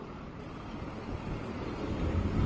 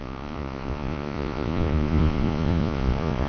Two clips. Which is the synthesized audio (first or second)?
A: second